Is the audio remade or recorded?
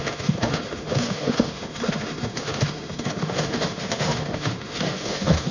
remade